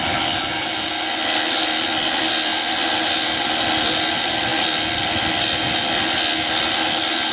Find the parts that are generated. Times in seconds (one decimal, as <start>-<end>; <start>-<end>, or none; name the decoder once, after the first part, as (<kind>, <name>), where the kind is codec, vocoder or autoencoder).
none